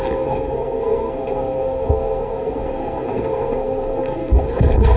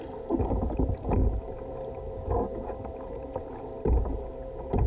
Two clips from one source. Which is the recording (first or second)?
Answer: second